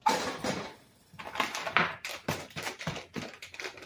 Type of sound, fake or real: fake